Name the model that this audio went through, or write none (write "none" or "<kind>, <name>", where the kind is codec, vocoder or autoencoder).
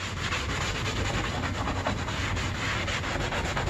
none